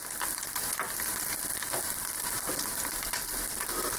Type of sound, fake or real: real